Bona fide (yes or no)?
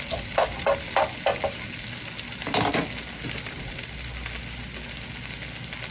yes